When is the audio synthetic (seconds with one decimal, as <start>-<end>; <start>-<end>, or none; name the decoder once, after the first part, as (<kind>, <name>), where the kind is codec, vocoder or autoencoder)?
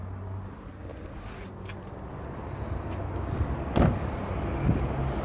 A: none